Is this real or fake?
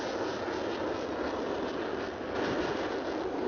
real